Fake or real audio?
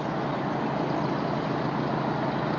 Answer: real